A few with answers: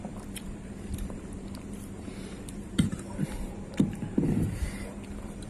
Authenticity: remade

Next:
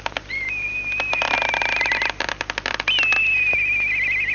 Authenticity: recorded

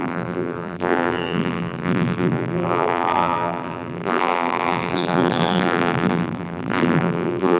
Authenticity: remade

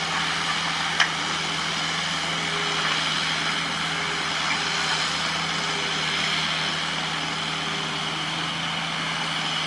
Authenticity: remade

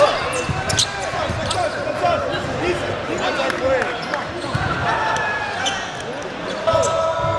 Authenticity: recorded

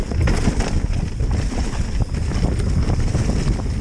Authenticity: recorded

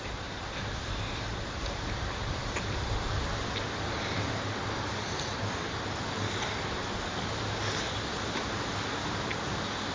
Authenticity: recorded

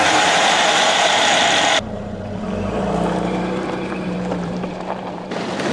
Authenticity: remade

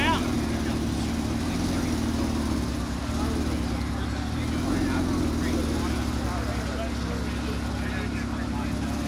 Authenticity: recorded